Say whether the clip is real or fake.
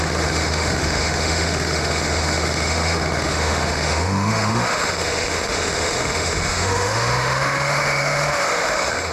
fake